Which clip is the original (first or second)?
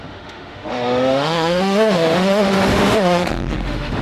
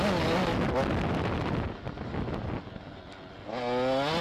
second